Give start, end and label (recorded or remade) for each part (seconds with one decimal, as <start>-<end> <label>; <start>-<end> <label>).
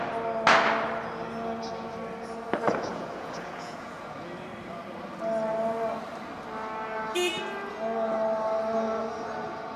0.0-2.9 recorded; 2.9-4.0 remade; 4.0-9.8 recorded